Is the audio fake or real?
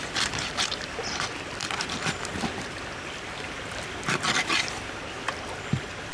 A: real